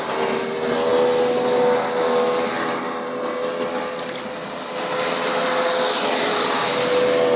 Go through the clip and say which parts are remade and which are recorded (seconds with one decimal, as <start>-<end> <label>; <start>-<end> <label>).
0.0-7.4 recorded